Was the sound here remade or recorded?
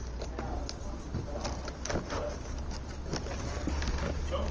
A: recorded